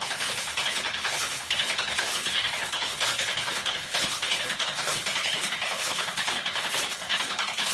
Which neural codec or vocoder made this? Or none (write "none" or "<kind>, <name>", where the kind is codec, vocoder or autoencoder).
codec, HILCodec